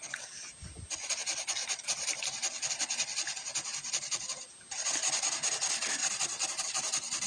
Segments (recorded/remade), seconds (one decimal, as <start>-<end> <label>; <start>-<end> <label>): 0.0-7.3 recorded